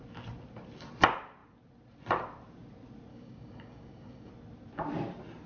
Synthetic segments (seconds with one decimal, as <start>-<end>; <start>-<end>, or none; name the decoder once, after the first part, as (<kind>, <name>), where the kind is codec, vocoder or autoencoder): 3.1-4.3 (codec, DAC)